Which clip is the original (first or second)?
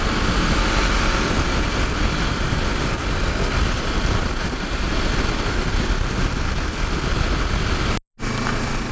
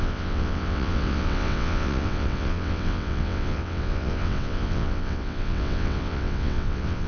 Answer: first